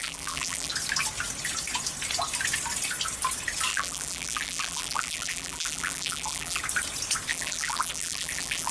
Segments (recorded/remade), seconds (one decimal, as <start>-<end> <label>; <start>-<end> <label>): 0.0-0.7 remade; 0.7-3.7 recorded; 3.7-6.6 remade; 6.6-7.3 recorded; 7.3-8.7 remade